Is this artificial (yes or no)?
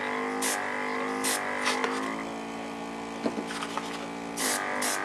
no